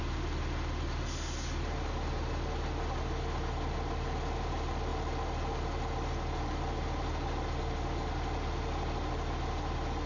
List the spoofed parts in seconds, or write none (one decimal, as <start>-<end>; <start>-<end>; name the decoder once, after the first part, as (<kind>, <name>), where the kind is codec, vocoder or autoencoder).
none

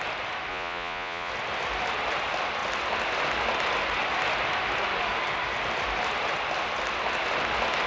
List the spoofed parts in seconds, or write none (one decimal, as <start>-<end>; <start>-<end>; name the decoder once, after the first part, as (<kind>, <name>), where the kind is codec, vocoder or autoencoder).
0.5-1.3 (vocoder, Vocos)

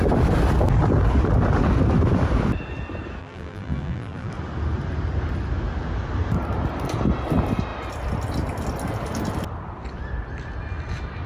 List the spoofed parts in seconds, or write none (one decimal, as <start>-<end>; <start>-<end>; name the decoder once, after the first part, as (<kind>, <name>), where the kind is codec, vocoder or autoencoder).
3.2-4.3 (vocoder, BigVGAN v2)

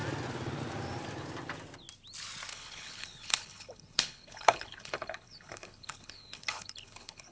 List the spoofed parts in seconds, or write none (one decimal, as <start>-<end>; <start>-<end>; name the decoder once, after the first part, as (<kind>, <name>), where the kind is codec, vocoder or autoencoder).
2.5-7.3 (codec, HILCodec)

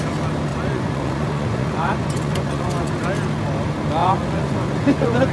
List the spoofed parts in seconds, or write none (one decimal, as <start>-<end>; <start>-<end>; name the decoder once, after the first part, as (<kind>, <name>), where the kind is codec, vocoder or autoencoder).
0.5-2.9 (vocoder, Vocos); 4.0-5.3

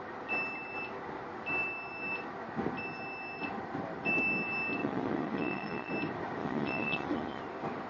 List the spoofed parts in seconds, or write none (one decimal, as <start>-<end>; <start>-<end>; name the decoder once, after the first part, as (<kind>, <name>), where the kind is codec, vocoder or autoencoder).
4.8-5.9 (vocoder, Vocos); 6.4-7.4